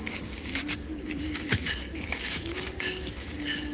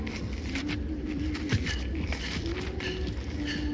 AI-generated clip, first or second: first